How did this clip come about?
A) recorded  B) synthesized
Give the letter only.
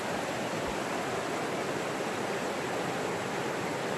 A